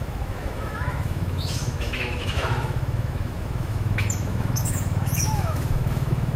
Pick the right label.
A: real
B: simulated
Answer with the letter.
B